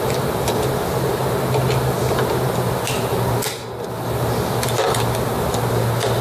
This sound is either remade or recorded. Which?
recorded